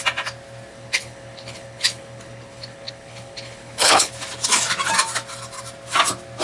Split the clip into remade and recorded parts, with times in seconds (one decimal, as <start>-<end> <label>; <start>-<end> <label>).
0.0-0.7 recorded; 0.7-4.1 remade; 4.1-6.4 recorded

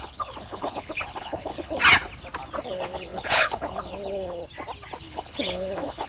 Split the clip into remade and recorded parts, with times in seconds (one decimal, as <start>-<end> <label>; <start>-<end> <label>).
0.0-1.8 remade; 1.8-2.6 recorded; 2.6-4.4 remade; 4.4-5.0 recorded; 5.0-6.1 remade

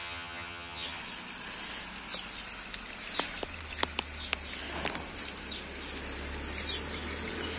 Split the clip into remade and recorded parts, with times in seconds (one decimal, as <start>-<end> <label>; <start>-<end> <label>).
0.0-1.0 remade; 1.0-7.6 recorded